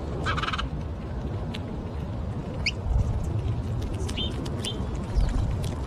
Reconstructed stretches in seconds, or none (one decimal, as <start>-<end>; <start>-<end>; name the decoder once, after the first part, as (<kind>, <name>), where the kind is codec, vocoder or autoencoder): none